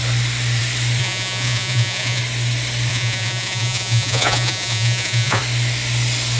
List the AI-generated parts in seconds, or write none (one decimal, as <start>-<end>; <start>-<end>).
1.0-2.2; 2.9-5.4